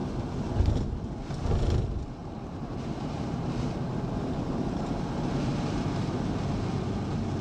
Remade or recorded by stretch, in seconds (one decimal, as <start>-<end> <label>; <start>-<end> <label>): 0.0-2.2 recorded; 2.2-6.6 remade; 6.6-7.4 recorded